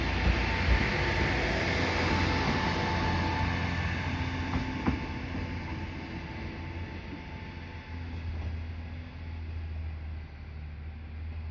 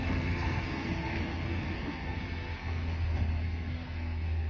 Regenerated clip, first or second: second